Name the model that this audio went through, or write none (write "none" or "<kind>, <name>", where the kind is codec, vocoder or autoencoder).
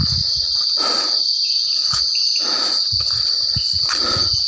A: none